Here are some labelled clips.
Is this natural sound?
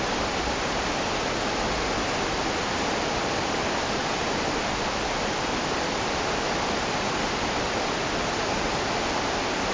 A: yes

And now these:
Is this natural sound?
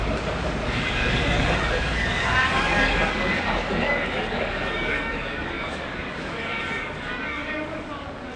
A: no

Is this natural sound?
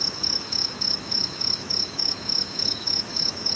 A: no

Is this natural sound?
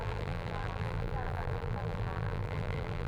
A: no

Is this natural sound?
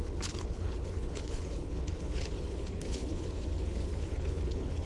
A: no